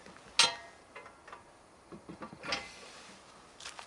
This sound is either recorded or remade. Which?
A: recorded